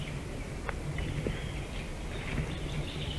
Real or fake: real